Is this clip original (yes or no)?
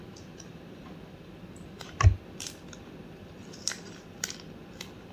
yes